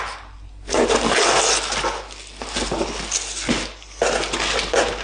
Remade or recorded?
recorded